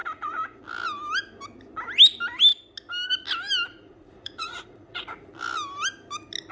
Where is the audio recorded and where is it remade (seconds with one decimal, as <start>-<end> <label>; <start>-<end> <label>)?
0.0-0.6 remade; 0.6-3.7 recorded; 3.7-5.3 remade; 5.3-6.5 recorded